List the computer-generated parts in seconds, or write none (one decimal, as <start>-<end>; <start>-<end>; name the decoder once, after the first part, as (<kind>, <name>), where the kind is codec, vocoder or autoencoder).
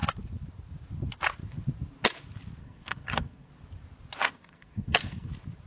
2.6-3.5 (codec, SNAC); 4.2-5.3